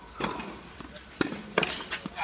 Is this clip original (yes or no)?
yes